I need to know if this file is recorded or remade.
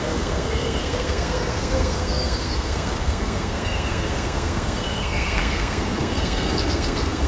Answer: remade